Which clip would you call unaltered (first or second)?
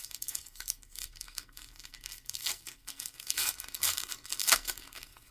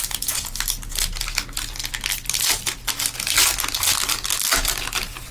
second